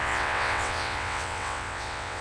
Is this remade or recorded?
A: remade